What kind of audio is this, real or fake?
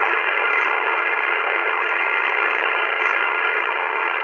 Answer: fake